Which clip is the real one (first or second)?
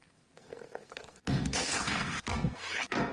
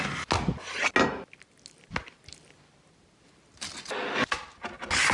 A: second